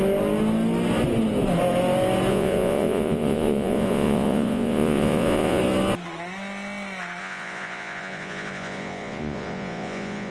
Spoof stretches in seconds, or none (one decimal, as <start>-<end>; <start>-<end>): 2.3-5.6; 7.2-10.3